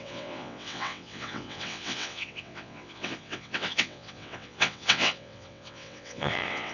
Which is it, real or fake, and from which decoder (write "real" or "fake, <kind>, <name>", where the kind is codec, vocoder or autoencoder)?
fake, vocoder, WaveNeXt